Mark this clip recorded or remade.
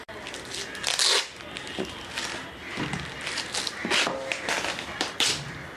recorded